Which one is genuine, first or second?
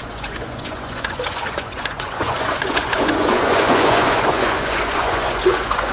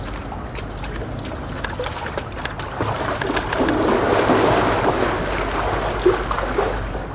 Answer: second